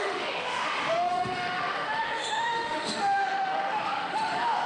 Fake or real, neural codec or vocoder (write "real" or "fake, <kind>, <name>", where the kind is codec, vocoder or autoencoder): fake, autoencoder, DAC-VAE